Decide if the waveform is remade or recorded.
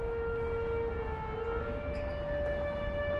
recorded